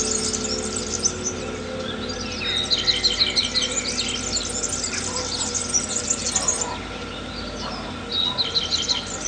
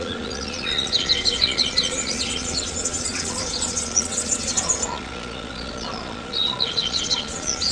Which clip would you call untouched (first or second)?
first